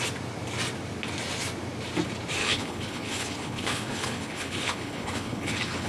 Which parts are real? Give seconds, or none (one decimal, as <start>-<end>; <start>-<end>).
0.0-2.4

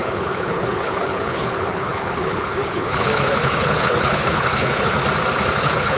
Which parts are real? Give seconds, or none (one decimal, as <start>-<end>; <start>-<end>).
5.0-5.6

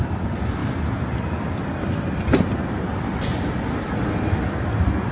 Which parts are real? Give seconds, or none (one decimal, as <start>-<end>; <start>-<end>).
0.0-5.1

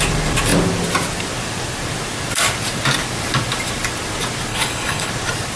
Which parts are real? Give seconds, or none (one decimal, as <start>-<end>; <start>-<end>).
0.0-4.5; 5.1-5.6

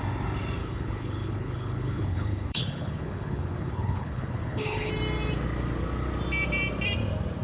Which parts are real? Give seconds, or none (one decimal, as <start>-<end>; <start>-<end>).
0.0-0.6; 4.9-7.4

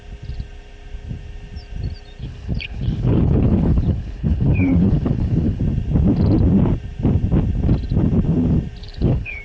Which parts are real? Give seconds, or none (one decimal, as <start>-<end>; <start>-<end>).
0.0-2.2; 5.6-8.8

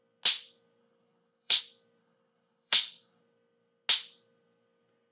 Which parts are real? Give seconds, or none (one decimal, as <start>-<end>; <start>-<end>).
0.0-0.8; 1.6-2.0; 3.2-5.1

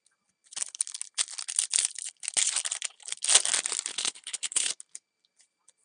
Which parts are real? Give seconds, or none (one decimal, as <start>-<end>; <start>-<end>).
0.0-3.9; 4.7-5.8